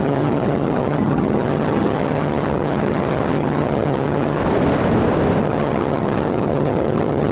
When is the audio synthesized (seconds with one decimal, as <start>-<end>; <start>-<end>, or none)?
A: 0.0-4.4; 5.4-7.3